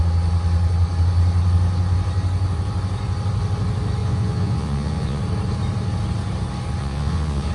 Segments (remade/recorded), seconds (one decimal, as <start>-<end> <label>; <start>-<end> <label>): 0.0-4.0 recorded; 4.0-5.2 remade; 5.2-6.8 recorded; 6.8-7.5 remade